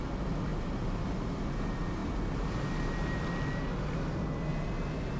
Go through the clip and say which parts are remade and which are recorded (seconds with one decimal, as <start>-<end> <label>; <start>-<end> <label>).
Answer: 0.0-5.2 recorded